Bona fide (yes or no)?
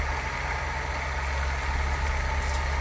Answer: yes